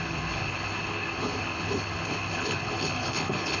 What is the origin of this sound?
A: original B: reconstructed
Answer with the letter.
B